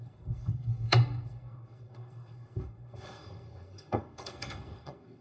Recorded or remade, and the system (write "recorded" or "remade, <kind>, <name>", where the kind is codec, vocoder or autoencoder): remade, codec, SNAC